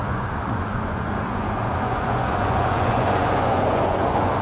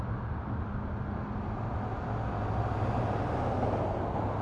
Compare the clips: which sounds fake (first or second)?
first